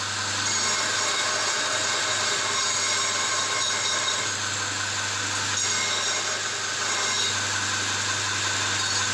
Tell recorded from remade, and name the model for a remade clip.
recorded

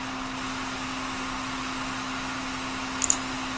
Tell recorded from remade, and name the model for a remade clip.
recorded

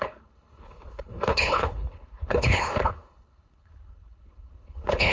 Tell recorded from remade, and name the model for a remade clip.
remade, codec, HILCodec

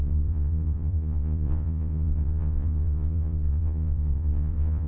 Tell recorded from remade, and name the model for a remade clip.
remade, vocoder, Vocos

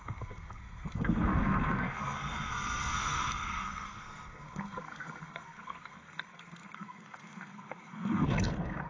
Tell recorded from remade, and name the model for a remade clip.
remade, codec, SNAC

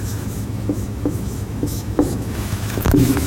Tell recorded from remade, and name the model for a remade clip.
remade, autoencoder, DAC-VAE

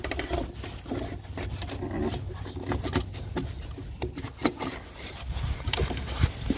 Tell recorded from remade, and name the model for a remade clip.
recorded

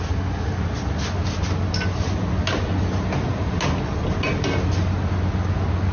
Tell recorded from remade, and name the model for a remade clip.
recorded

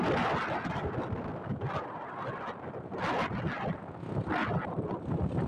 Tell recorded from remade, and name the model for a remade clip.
recorded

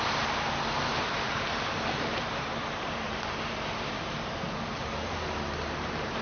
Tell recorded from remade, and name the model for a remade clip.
remade, vocoder, BigVGAN v2